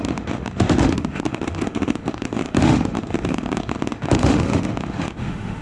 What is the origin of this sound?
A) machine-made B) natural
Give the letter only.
A